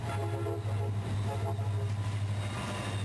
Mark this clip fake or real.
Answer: real